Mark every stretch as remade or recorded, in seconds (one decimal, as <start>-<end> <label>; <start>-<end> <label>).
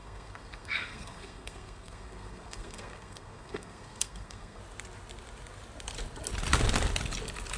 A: 0.0-4.6 remade; 4.6-7.6 recorded